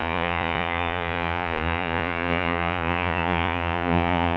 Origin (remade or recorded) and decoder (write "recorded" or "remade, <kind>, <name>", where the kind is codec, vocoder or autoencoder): remade, vocoder, Vocos